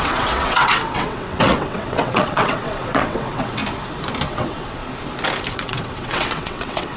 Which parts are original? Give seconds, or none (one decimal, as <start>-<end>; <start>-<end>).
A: 3.6-4.3; 4.8-5.5